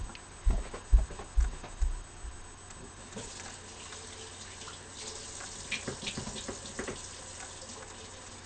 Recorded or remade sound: recorded